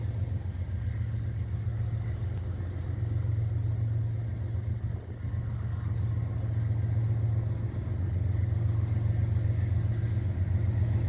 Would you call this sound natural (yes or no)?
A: yes